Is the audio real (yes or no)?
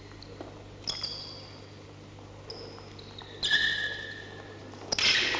yes